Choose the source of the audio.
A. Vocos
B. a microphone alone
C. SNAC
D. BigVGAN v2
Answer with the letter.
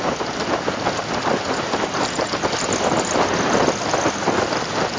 B